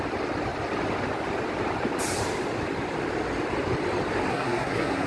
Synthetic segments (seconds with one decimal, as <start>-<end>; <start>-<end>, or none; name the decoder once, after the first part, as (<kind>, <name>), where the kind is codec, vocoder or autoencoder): 4.3-5.1 (codec, SNAC)